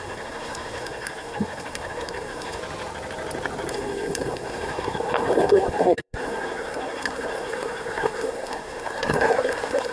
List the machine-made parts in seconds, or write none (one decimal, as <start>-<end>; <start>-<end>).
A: 0.0-2.6; 3.7-9.9